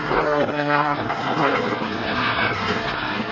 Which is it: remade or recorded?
remade